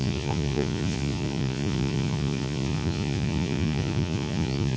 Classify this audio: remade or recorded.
remade